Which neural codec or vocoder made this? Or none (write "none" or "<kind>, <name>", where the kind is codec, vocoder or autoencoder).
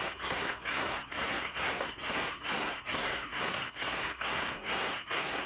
codec, SNAC